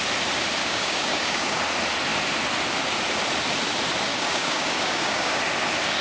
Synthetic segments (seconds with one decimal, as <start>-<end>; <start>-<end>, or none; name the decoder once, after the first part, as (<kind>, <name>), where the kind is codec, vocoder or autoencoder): 0.6-1.6 (codec, DAC); 4.1-5.4